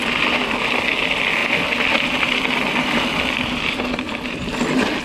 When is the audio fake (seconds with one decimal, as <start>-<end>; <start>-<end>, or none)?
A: none